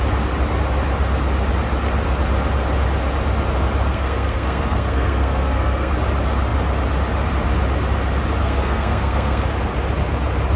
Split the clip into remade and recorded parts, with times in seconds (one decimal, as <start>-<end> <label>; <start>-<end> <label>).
0.0-3.9 recorded; 3.9-5.9 remade; 5.9-8.4 recorded; 8.4-9.4 remade; 9.4-10.6 recorded